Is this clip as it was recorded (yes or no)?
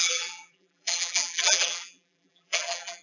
no